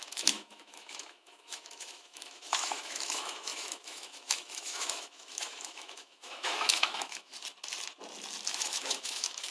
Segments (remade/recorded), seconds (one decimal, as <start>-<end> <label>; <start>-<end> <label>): 0.0-7.3 remade; 7.3-8.5 recorded; 8.5-9.5 remade